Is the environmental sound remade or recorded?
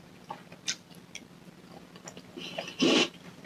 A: recorded